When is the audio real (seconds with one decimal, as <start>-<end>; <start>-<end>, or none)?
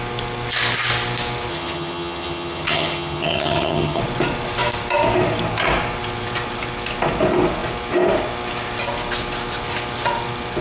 0.0-1.5; 4.0-10.6